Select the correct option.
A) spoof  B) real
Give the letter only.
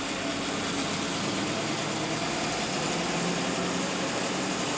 B